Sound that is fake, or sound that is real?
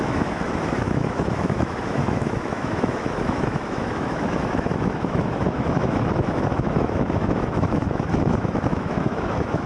fake